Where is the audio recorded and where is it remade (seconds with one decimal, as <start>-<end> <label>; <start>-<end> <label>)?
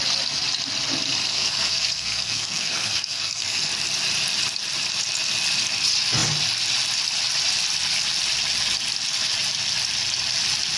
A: 0.0-1.3 recorded; 1.3-3.7 remade; 3.7-10.8 recorded